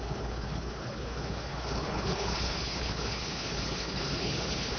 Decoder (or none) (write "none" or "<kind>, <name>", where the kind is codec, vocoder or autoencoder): codec, HILCodec